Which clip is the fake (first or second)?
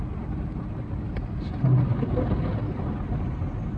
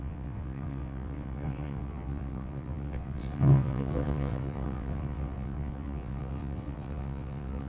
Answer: second